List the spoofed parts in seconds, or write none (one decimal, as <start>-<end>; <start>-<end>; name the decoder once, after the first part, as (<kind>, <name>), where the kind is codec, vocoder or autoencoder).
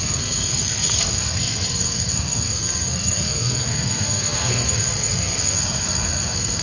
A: 0.0-6.6 (codec, SNAC)